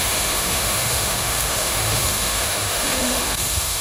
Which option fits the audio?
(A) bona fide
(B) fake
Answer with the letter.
B